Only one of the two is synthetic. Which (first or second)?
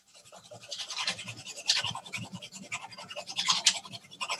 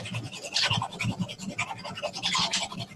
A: first